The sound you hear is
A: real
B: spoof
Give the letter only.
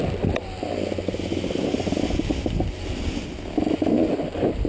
A